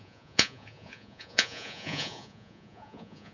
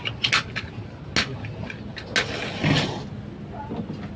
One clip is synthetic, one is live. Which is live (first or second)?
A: second